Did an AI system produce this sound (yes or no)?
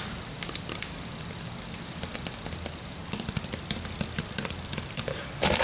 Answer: no